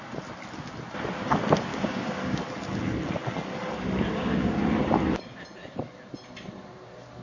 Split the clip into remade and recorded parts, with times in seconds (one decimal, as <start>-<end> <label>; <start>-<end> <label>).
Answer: 0.0-1.7 recorded; 1.7-2.4 remade; 2.4-4.1 recorded; 4.1-4.6 remade; 4.6-7.2 recorded